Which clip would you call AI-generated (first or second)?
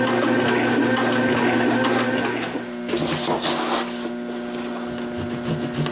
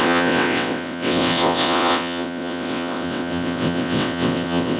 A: second